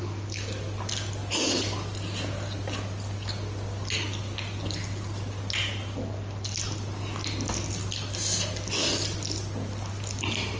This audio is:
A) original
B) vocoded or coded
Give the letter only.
A